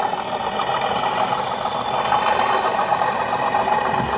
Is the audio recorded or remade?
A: recorded